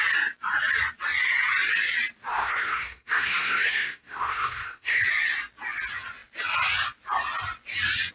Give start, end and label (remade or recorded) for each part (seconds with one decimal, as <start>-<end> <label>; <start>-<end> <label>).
0.0-2.3 recorded; 2.3-5.0 remade; 5.0-8.1 recorded